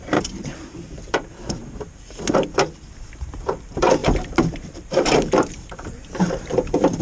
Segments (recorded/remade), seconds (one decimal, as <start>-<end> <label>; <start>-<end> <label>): 0.0-1.6 remade; 1.6-2.8 recorded; 2.8-7.0 remade